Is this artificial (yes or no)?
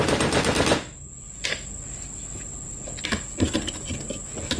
no